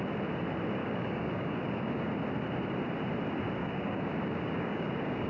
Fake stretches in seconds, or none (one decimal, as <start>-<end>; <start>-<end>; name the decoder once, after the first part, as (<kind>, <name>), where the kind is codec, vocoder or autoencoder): 0.8-2.1 (codec, DAC); 3.6-5.3